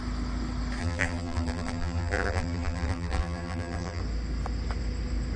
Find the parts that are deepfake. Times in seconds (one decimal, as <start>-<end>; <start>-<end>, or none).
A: 0.8-4.0